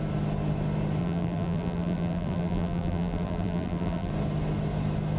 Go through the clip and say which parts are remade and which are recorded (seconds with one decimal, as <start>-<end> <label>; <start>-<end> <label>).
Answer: 0.0-1.0 recorded; 1.0-4.1 remade; 4.1-5.2 recorded